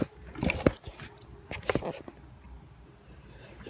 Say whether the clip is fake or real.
fake